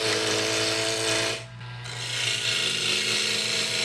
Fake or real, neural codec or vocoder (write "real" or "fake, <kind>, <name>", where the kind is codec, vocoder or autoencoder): real